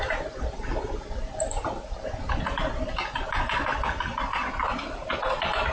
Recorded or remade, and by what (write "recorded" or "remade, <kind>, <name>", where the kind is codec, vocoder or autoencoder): remade, vocoder, BigVGAN v2